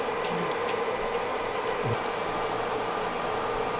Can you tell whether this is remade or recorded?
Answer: recorded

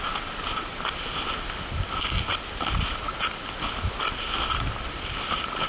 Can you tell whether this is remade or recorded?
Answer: recorded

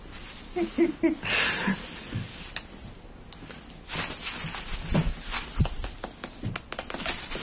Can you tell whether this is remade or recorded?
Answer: recorded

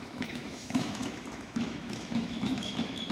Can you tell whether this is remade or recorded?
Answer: remade